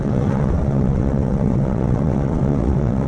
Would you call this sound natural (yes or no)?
no